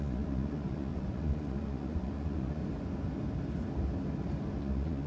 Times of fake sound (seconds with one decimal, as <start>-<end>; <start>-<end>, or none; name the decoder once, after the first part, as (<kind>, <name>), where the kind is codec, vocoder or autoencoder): 0.0-2.6 (vocoder, Vocos); 4.6-5.1